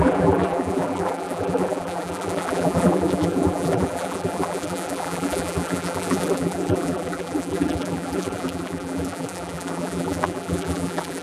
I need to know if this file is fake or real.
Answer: fake